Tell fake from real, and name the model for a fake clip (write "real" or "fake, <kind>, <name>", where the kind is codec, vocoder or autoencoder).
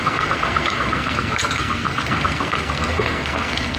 fake, codec, SNAC